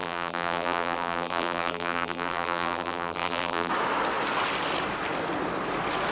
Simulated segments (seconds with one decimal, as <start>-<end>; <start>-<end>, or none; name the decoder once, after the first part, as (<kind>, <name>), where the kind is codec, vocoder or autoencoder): 0.0-3.7 (vocoder, BigVGAN v2)